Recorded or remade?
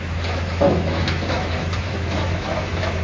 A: remade